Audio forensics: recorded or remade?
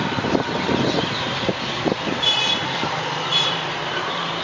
remade